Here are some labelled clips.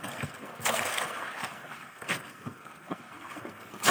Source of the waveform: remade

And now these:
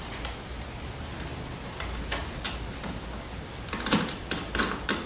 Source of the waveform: recorded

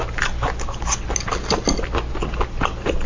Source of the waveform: recorded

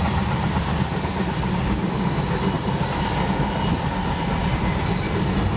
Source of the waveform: recorded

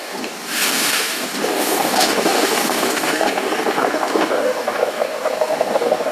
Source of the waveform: remade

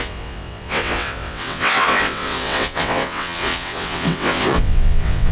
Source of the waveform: remade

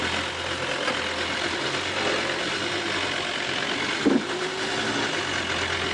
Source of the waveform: recorded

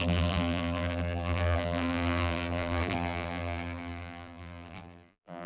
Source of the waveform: remade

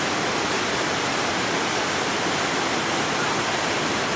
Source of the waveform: recorded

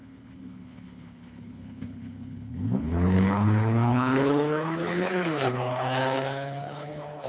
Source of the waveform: remade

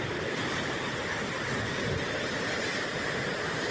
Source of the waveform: recorded